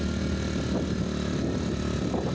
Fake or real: real